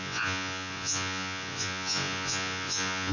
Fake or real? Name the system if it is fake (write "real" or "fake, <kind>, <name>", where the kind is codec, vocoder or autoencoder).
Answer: fake, vocoder, Vocos